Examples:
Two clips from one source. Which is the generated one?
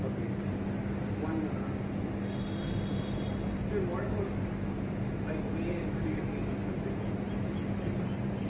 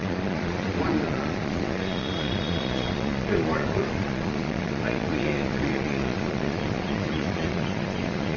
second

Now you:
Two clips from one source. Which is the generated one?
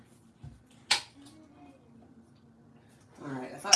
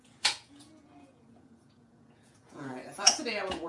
second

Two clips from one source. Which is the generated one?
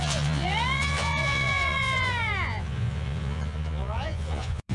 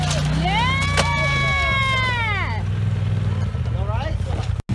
first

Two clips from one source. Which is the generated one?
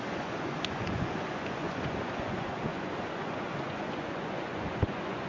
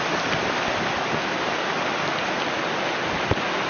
first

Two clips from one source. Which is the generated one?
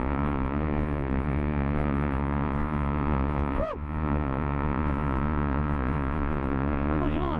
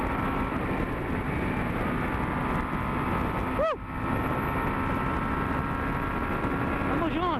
first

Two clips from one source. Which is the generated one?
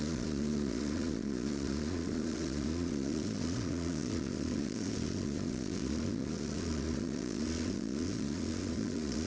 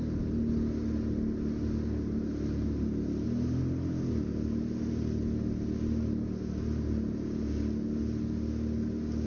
first